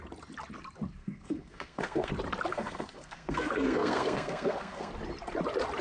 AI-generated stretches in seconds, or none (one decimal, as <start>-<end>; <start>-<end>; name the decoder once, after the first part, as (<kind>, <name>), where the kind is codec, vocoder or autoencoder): 1.0-2.1 (codec, SNAC); 2.5-4.9